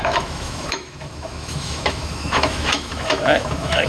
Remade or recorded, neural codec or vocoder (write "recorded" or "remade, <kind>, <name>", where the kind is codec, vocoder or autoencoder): remade, autoencoder, DAC-VAE